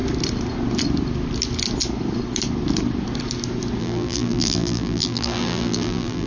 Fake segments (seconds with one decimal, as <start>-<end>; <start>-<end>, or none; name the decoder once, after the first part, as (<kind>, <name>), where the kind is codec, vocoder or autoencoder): 3.8-6.3 (vocoder, BigVGAN v2)